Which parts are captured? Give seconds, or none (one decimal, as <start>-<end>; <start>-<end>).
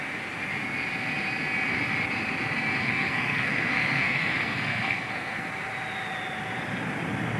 0.0-2.8; 5.5-7.4